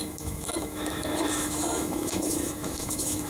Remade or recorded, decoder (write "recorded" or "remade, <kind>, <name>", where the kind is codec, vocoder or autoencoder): remade, autoencoder, DAC-VAE